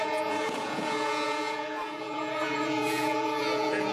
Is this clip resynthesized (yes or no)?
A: yes